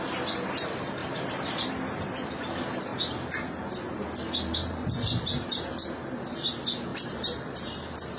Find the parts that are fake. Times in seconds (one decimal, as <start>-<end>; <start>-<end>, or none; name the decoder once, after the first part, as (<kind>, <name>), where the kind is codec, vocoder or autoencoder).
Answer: 1.0-1.7 (vocoder, BigVGAN v2); 2.9-3.6; 4.6-5.7; 6.9-8.2